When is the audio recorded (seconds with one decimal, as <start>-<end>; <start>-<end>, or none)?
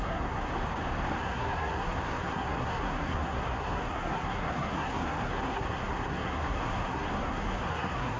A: 0.5-1.2